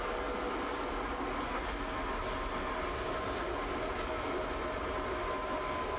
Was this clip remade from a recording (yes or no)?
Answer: no